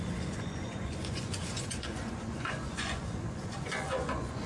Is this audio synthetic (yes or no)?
yes